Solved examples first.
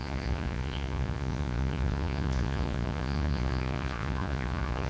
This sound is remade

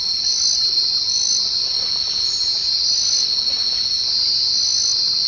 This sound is recorded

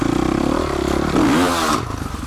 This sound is recorded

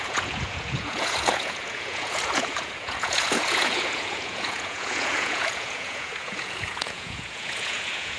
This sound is remade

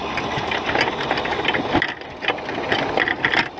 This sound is recorded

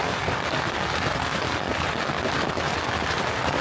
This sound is recorded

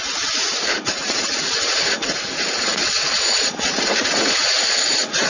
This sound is remade